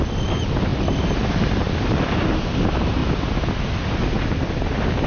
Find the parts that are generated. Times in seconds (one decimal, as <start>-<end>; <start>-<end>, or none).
none